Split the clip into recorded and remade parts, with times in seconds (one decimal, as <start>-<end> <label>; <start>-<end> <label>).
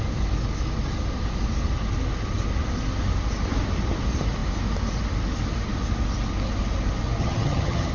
0.0-7.2 recorded; 7.2-7.9 remade